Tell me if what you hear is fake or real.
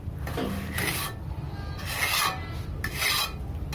real